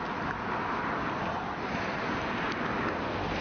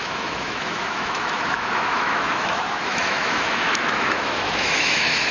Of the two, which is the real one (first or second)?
first